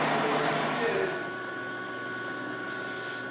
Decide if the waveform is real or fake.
real